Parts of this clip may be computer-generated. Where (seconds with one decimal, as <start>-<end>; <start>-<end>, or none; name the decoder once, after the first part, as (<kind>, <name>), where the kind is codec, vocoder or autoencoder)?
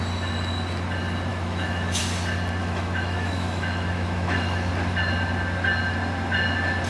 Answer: 1.3-2.0 (autoencoder, DAC-VAE); 2.6-4.7